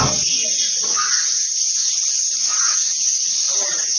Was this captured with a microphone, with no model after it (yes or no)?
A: yes